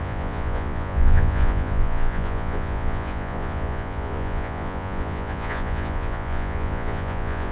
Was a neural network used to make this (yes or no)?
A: yes